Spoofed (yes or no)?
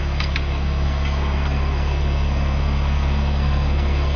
yes